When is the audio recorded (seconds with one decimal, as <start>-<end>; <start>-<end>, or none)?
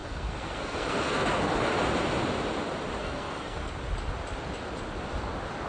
1.5-3.0; 3.7-5.7